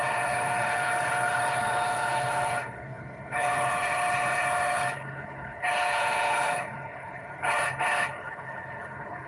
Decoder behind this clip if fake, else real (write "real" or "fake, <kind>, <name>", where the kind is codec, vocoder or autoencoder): fake, codec, HILCodec